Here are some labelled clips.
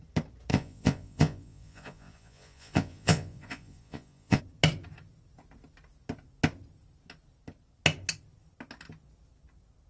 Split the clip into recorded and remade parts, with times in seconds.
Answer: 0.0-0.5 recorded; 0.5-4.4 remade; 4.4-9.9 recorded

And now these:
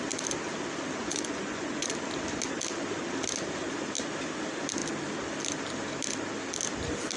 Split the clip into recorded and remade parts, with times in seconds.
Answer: 0.0-1.0 recorded; 1.0-1.9 remade; 1.9-7.2 recorded